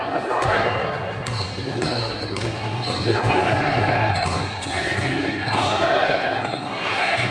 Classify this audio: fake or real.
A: fake